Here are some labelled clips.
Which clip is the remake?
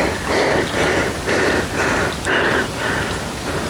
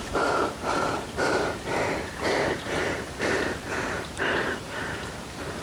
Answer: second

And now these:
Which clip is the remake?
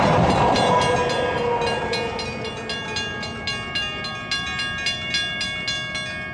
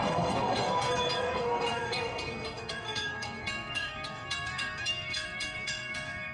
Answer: second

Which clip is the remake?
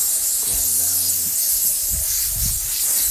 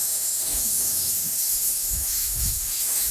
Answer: second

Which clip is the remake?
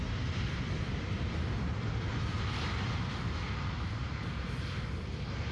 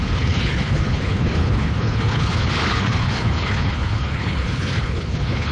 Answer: second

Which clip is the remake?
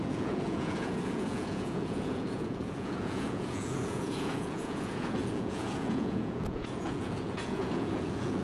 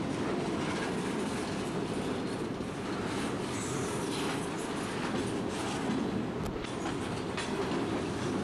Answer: first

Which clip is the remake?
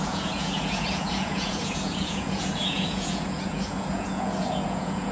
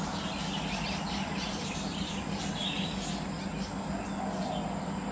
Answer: first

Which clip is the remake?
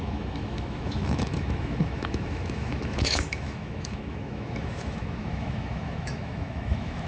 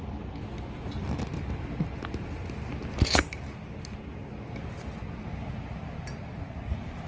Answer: first